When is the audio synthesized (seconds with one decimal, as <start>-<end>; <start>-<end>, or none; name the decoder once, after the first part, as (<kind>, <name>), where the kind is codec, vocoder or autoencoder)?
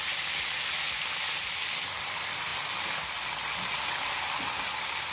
none